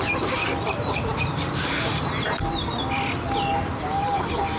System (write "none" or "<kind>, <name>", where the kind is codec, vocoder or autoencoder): vocoder, BigVGAN v2